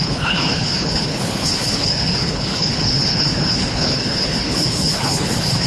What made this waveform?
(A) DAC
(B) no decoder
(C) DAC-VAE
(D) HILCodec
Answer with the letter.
D